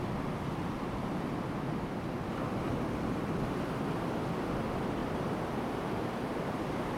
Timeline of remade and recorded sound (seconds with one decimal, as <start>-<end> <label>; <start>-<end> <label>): 0.0-0.6 recorded; 0.6-1.1 remade; 1.1-5.0 recorded; 5.0-6.5 remade; 6.5-7.0 recorded